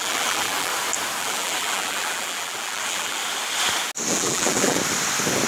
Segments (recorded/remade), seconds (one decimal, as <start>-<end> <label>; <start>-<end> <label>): 0.0-0.7 remade; 0.7-1.2 recorded; 1.2-3.2 remade; 3.2-4.1 recorded; 4.1-4.8 remade; 4.8-5.5 recorded